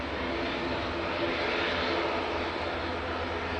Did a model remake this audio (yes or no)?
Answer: no